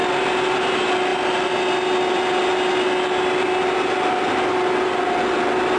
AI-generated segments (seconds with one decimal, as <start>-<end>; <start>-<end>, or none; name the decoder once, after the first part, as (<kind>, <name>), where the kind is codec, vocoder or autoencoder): 0.0-0.6 (vocoder, BigVGAN v2)